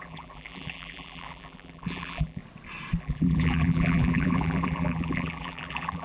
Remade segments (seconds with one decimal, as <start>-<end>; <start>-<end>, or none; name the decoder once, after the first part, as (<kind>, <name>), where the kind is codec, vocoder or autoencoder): 0.0-2.4 (vocoder, BigVGAN v2); 3.0-6.0